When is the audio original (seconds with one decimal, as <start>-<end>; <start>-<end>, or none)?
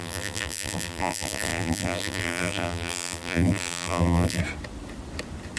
4.4-5.6